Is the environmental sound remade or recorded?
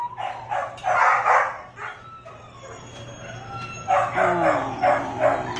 recorded